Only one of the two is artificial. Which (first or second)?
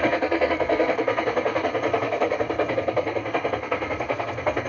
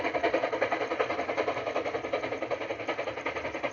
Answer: first